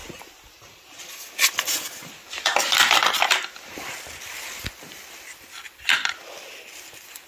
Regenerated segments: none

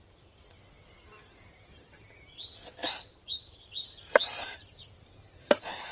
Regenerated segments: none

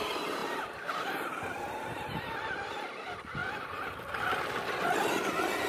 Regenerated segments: 0.4-2.7 (vocoder, BigVGAN v2)

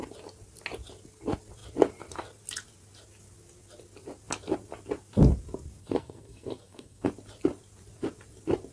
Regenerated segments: 5.8-7.1 (codec, SNAC)